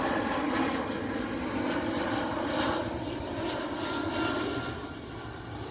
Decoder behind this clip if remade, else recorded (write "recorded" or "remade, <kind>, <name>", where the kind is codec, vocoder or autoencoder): recorded